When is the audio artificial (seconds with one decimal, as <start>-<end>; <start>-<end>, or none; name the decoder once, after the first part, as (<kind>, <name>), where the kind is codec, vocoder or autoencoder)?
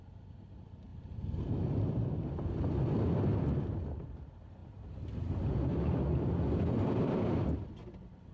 0.9-1.4 (vocoder, BigVGAN v2); 3.3-3.8; 4.6-6.0